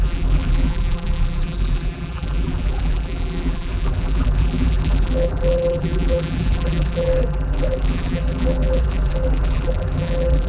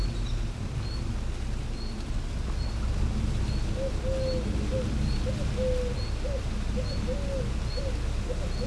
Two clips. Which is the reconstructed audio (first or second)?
first